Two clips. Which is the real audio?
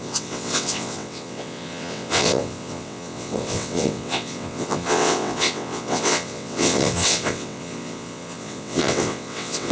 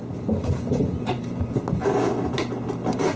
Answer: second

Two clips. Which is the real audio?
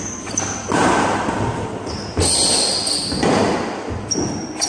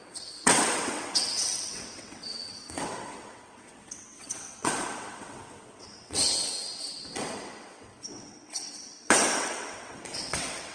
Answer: first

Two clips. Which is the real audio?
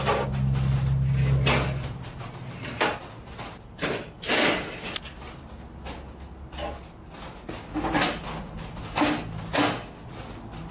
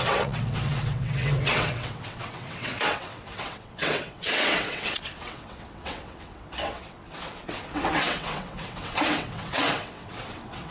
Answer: first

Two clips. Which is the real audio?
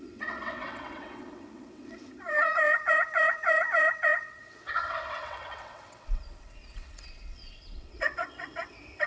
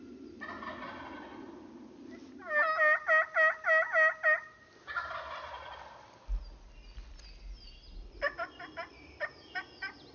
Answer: second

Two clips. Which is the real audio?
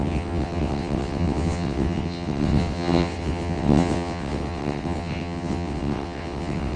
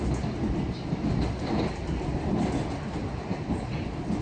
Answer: second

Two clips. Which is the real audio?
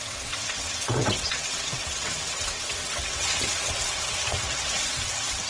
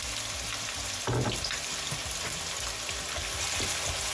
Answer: second